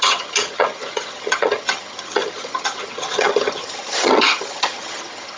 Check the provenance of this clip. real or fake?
fake